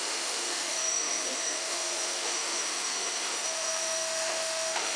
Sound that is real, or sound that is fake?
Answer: fake